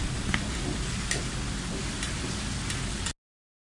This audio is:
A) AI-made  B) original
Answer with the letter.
B